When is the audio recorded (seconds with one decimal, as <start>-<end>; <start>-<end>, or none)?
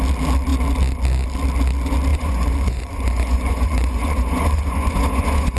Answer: 0.0-2.1